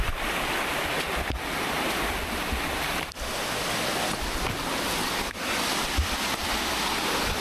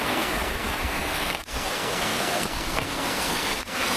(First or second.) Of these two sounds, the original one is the first